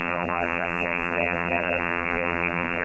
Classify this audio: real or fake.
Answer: fake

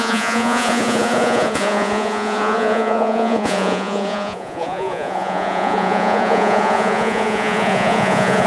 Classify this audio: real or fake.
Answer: fake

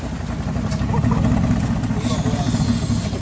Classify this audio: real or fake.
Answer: real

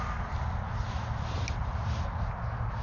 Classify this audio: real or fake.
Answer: real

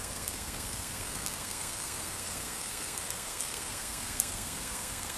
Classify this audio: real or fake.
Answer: fake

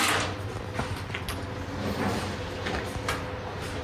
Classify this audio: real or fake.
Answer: real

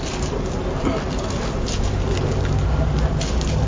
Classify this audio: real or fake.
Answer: real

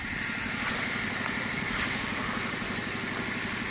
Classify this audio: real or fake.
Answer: real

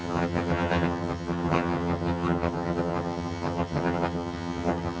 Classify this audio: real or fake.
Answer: fake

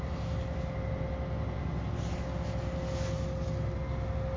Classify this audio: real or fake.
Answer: real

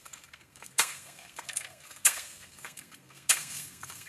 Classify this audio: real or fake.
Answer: fake